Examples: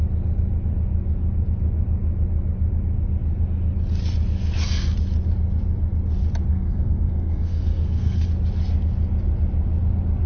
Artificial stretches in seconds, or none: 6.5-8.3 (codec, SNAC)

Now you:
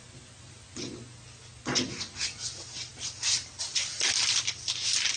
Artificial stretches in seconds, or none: none

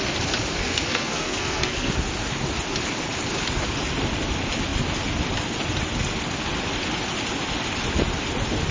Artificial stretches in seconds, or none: 0.5-1.9 (codec, SNAC)

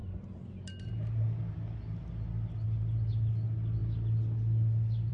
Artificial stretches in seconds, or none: none

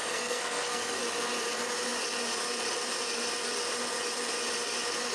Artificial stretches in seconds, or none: 0.0-1.0 (codec, SNAC)